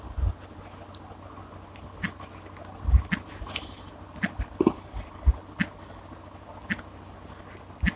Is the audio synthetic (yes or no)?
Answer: no